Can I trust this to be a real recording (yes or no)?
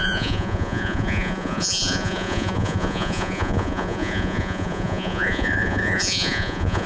no